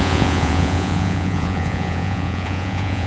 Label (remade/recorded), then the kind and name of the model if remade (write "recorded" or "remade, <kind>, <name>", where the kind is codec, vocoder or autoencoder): remade, vocoder, Vocos